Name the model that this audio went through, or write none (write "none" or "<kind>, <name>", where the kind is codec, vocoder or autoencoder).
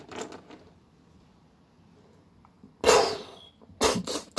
none